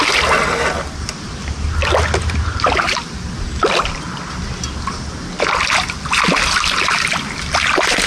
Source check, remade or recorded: recorded